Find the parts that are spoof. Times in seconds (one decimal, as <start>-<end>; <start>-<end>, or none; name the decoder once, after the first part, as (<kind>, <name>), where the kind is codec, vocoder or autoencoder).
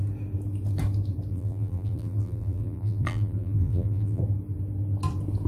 1.3-4.2 (vocoder, BigVGAN v2)